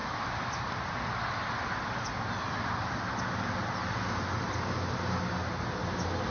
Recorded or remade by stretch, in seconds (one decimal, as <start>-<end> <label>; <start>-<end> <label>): 0.0-6.3 recorded

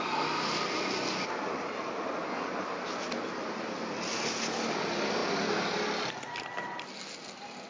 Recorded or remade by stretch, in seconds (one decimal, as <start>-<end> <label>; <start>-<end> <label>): 0.0-7.7 recorded